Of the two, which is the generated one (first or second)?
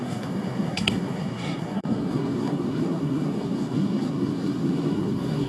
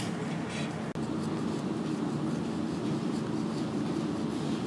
first